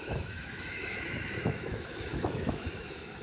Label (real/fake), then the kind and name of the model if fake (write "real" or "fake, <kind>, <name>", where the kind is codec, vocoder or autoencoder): fake, autoencoder, DAC-VAE